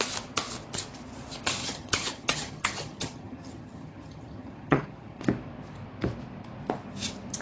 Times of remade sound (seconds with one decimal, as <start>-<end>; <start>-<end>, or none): 1.6-5.2